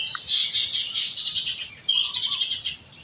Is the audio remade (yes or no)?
no